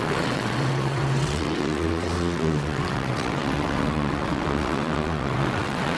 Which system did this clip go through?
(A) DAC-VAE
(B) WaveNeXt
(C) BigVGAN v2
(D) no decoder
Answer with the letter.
B